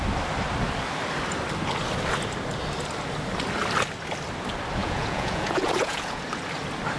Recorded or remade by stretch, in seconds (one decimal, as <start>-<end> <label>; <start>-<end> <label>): 0.0-4.8 recorded; 4.8-6.2 remade; 6.2-7.0 recorded